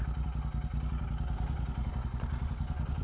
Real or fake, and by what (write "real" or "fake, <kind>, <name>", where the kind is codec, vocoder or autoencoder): real